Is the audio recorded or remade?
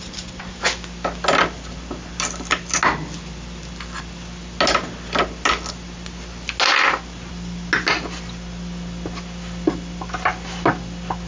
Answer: recorded